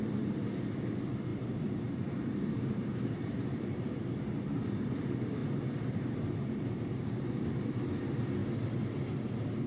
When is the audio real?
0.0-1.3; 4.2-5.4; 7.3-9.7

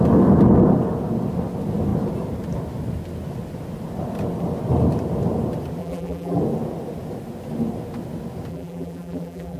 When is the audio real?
0.0-5.8; 6.4-8.5

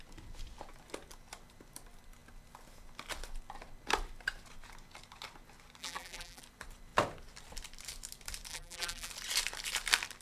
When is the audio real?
0.0-5.8; 6.4-8.5; 9.1-10.2

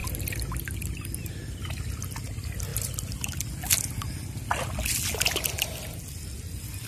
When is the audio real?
0.0-6.9

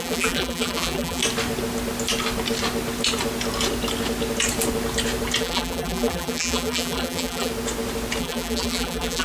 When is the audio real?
1.2-5.4; 7.5-8.2

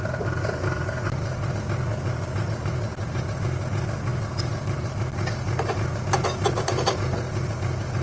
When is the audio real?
0.0-1.9; 2.7-4.1; 5.1-8.0

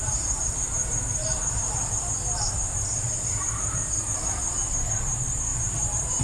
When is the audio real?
none